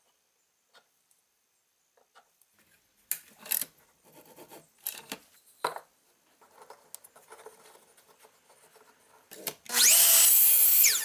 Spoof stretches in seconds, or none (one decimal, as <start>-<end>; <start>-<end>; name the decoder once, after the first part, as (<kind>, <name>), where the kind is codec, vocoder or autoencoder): none